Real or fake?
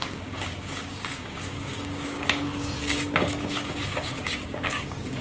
fake